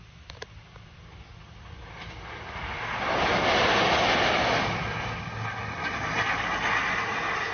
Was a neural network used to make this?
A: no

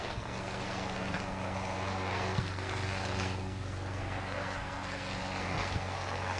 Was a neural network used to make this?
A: yes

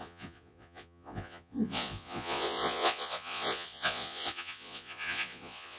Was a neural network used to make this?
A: yes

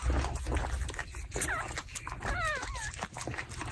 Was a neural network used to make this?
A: no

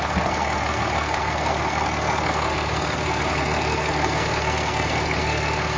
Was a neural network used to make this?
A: yes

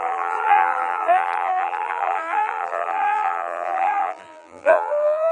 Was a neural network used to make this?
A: yes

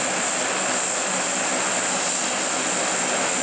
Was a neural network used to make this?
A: no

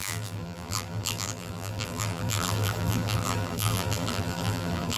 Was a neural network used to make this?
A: yes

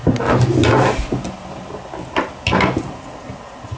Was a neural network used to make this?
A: no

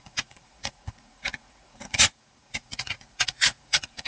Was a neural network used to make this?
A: yes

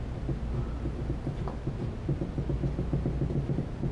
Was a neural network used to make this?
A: no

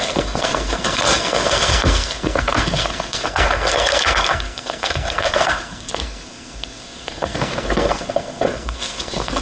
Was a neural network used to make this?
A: yes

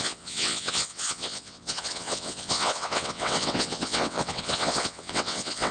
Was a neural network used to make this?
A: yes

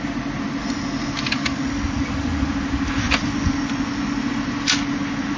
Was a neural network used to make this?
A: no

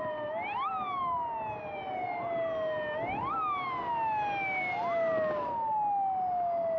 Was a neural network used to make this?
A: no